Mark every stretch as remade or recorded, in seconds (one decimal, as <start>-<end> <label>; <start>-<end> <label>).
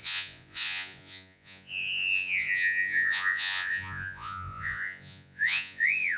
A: 0.0-6.2 remade